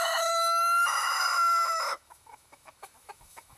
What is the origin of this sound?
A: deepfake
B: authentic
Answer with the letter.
A